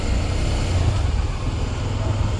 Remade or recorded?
recorded